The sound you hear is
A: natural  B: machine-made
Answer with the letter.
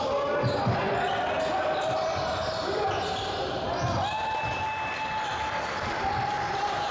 A